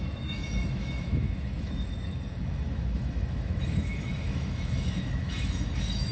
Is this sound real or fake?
fake